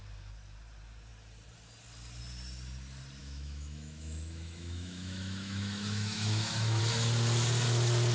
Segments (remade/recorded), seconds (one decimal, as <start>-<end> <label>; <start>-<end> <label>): 0.0-3.2 recorded; 3.2-6.8 remade; 6.8-8.1 recorded